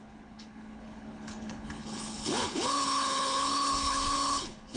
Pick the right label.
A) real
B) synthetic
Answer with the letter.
B